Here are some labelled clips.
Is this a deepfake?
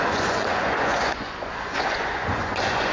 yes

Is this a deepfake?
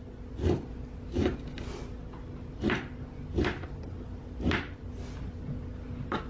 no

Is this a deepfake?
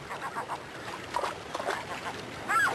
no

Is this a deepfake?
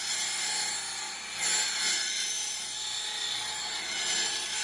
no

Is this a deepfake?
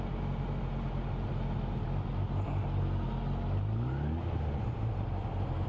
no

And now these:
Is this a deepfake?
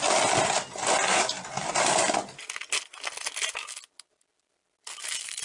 no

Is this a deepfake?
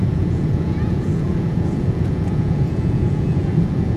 yes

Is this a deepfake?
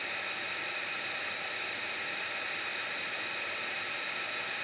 no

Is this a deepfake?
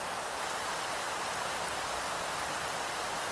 no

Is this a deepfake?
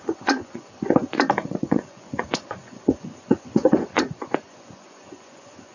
yes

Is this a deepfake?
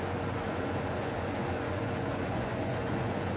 yes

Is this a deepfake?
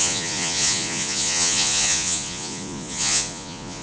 yes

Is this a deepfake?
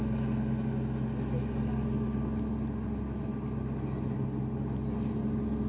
no